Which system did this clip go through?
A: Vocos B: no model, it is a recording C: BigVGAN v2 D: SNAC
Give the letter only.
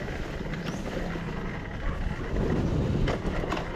B